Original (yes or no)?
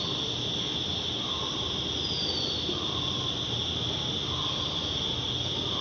yes